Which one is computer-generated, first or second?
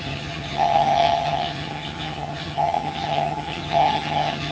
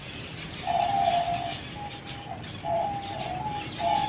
first